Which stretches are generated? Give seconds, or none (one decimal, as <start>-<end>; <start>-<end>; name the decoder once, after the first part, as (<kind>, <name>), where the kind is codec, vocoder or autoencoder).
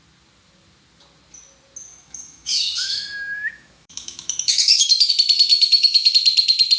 1.9-5.1 (autoencoder, DAC-VAE); 5.5-6.1